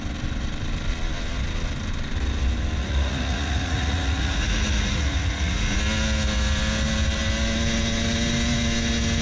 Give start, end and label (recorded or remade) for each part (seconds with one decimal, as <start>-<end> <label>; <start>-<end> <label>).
0.0-2.8 recorded; 2.8-5.8 remade; 5.8-9.2 recorded